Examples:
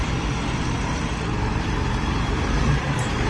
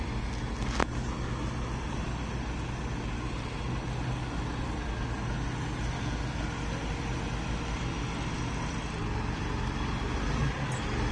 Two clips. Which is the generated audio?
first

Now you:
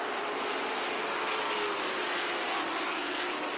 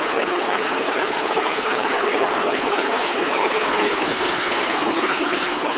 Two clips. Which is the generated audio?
second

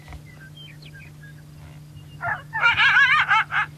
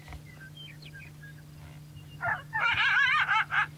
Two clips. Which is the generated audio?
second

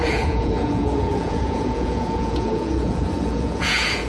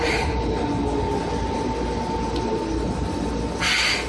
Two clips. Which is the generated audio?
first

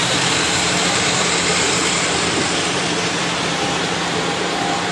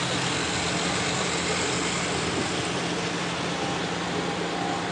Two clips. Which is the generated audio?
first